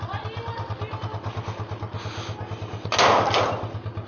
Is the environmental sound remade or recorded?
recorded